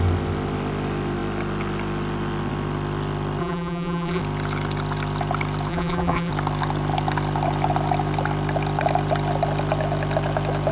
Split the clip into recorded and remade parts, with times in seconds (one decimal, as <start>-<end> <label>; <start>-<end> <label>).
0.0-3.4 recorded; 3.4-4.2 remade; 4.2-5.7 recorded; 5.7-6.3 remade; 6.3-10.7 recorded